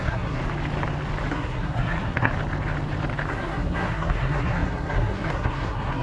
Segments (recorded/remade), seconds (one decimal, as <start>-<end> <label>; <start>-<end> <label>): 0.0-0.4 remade; 0.4-1.3 recorded; 1.3-2.3 remade; 2.3-3.3 recorded; 3.3-6.0 remade